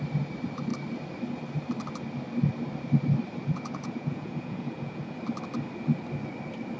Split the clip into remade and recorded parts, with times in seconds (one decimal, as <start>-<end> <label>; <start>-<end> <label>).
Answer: 0.0-3.4 recorded; 3.4-5.2 remade; 5.2-6.8 recorded